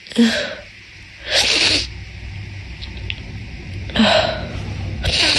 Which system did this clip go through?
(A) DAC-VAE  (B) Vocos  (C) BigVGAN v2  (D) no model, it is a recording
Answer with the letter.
D